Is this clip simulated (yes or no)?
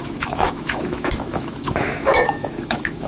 yes